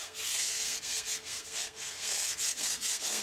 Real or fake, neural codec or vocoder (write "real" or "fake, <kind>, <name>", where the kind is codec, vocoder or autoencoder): fake, codec, SNAC